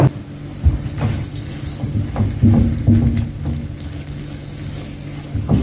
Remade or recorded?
recorded